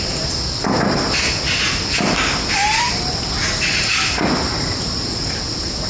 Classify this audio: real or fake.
real